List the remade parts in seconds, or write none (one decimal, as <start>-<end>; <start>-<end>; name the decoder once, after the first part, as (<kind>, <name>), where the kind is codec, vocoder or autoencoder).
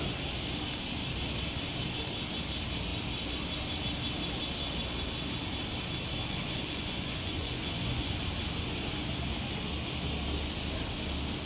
6.2-8.1 (vocoder, Vocos)